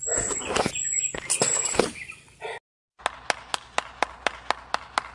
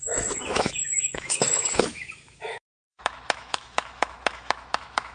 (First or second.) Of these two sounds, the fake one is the second